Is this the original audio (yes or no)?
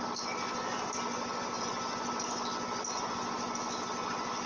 yes